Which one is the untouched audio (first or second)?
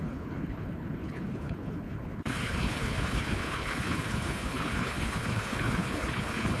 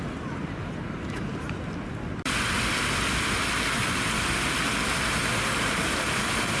second